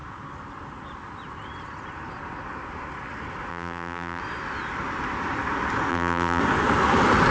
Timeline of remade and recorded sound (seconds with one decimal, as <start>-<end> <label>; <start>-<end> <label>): 0.0-3.5 recorded; 3.5-4.2 remade; 4.2-5.9 recorded; 5.9-6.4 remade; 6.4-7.3 recorded